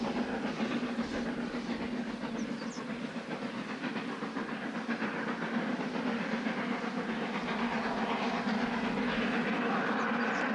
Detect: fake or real real